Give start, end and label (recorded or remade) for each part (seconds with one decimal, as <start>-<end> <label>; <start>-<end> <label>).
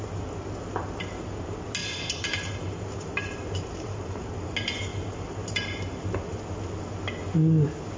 0.0-1.8 recorded; 1.8-4.3 remade; 4.3-4.9 recorded; 4.9-5.5 remade; 5.5-8.0 recorded